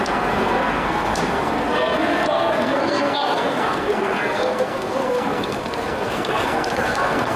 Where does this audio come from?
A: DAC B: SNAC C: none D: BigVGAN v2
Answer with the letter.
B